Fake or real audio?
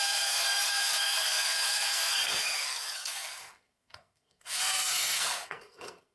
fake